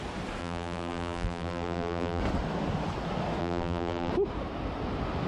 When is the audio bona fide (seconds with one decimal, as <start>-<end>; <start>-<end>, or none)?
0.0-0.4; 2.2-3.4; 4.1-5.3